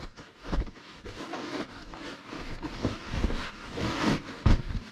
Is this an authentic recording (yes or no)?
no